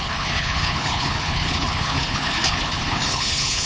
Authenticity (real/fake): fake